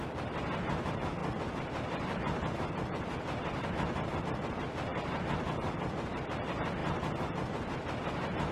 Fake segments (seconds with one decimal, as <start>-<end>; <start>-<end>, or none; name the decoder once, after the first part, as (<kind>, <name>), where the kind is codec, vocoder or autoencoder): 1.2-4.2 (vocoder, BigVGAN v2); 4.9-6.3